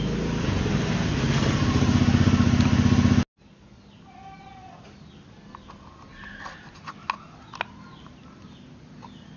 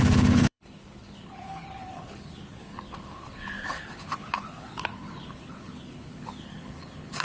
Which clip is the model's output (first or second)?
second